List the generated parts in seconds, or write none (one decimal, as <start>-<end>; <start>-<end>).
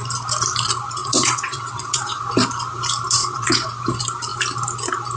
1.0-2.2; 3.2-3.7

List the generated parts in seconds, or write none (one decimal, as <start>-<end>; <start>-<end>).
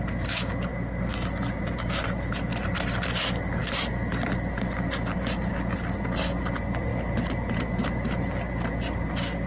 none